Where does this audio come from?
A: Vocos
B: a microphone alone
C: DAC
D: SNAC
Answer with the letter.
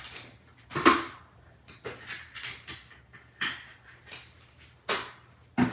B